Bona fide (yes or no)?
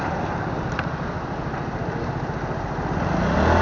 yes